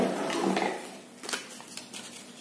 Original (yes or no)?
yes